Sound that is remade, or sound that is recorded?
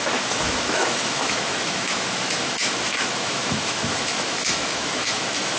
remade